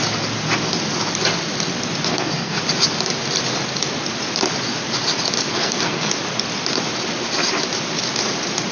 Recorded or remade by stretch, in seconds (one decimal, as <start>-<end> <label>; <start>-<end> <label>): 0.0-2.1 recorded; 2.1-2.6 remade; 2.6-5.5 recorded; 5.5-6.1 remade; 6.1-8.7 recorded